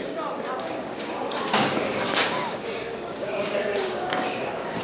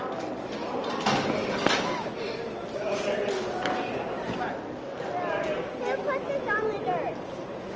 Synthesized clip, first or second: first